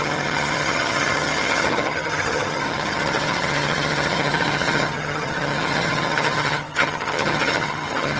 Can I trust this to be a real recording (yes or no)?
no